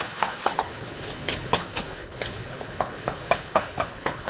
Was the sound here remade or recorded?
remade